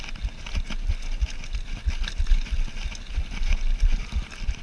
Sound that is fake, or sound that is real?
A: real